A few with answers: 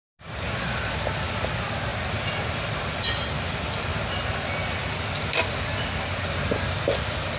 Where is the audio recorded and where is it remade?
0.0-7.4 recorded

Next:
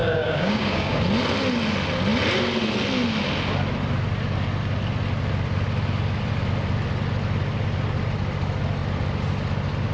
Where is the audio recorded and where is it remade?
0.0-1.0 remade; 1.0-9.9 recorded